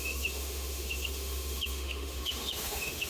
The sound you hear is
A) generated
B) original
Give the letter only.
A